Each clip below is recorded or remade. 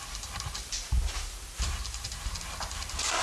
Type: remade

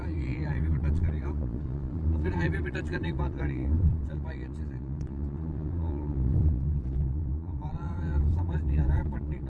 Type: remade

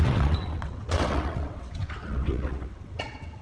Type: remade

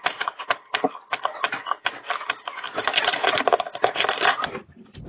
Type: recorded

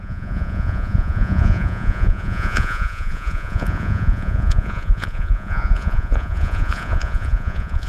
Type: remade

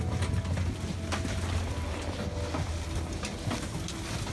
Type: recorded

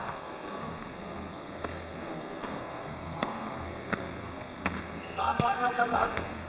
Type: remade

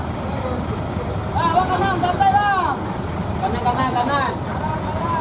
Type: recorded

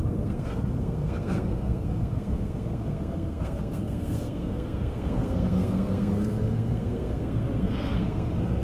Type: remade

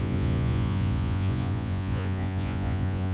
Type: remade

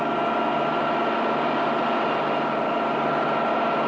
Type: recorded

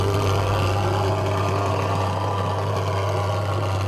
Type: recorded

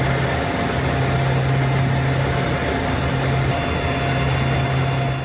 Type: recorded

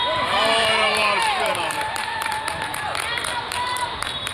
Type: remade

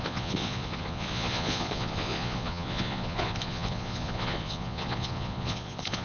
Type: remade